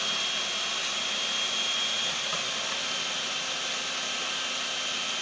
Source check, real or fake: real